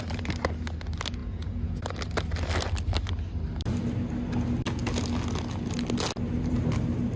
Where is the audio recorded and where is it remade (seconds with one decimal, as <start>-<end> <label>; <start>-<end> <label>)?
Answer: 0.0-1.2 recorded; 1.2-1.8 remade; 1.8-7.2 recorded